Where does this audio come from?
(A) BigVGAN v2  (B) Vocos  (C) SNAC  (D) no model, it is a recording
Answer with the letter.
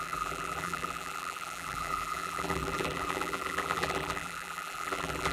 A